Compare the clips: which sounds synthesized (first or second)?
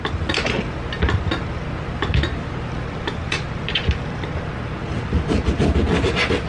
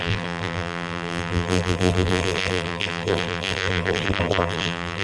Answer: second